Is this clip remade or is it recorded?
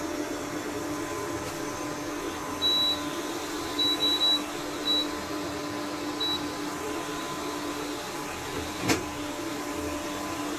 recorded